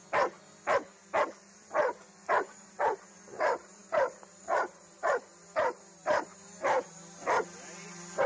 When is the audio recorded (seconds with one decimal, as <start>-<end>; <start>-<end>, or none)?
0.0-2.4